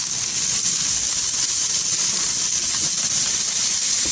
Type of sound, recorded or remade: recorded